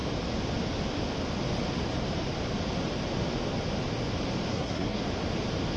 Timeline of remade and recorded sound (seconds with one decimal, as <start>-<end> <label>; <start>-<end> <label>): 0.0-4.5 recorded; 4.5-5.0 remade; 5.0-5.8 recorded